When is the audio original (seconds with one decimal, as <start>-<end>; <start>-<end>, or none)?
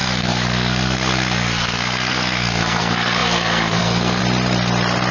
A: 4.2-5.1